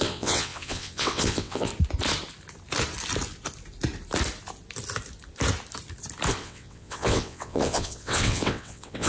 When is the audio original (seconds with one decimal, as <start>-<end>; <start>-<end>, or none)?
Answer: 1.7-6.3